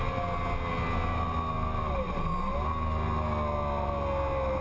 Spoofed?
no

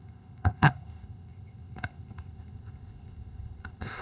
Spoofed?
yes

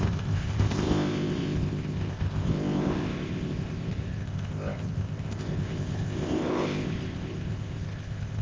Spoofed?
yes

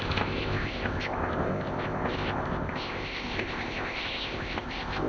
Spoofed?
yes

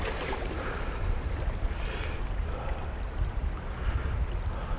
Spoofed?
no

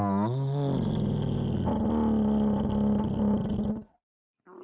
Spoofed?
no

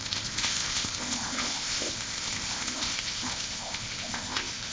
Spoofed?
yes